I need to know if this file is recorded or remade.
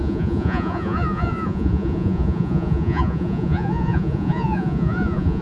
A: remade